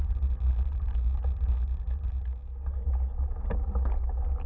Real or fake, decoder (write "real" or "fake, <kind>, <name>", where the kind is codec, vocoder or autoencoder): real